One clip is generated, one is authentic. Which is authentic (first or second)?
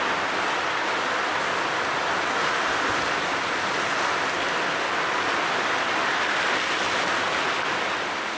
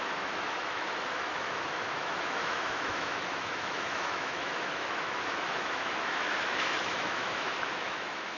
first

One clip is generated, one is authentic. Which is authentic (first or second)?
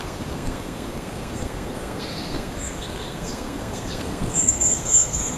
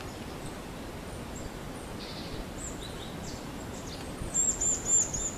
second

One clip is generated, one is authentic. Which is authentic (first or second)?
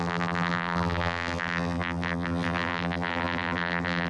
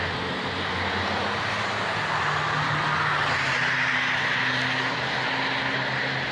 second